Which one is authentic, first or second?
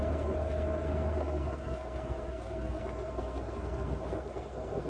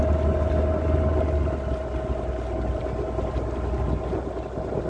second